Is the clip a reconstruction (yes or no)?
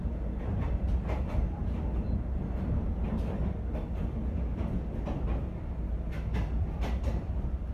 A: no